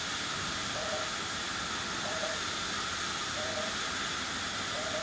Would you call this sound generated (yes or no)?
yes